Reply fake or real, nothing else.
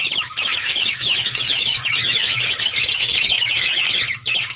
fake